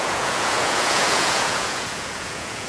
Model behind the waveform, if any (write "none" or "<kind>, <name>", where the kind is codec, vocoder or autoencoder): vocoder, Vocos